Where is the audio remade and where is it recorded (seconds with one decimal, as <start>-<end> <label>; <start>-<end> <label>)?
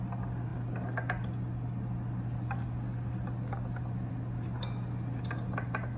0.0-6.0 recorded